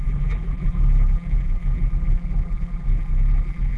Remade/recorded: remade